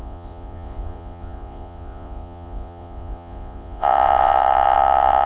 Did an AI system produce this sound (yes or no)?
yes